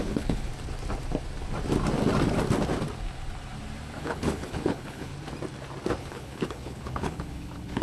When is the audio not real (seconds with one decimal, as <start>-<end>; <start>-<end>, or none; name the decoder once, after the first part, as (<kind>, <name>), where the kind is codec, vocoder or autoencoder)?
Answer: 0.0-0.5 (codec, HILCodec); 4.0-5.1; 6.0-7.8